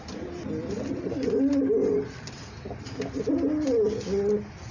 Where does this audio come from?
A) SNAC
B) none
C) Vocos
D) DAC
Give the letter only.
B